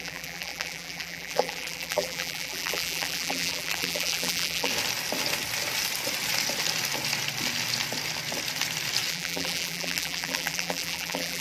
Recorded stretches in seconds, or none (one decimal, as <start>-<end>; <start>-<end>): 4.7-9.1